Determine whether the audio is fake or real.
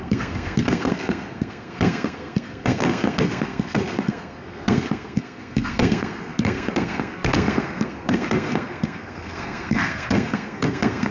fake